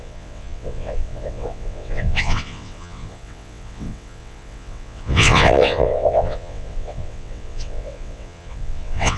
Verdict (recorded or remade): remade